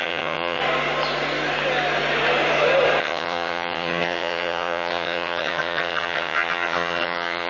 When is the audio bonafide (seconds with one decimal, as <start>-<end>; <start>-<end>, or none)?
0.6-3.0